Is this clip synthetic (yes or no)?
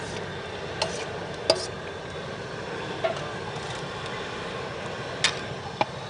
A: no